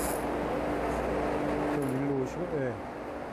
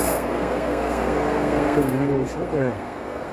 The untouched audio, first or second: first